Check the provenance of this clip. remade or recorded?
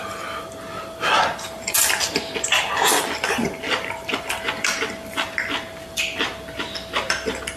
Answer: remade